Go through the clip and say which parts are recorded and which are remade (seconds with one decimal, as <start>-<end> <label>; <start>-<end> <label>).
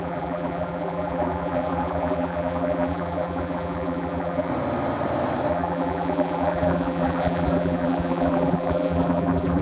0.0-4.5 remade; 4.5-5.5 recorded; 5.5-9.6 remade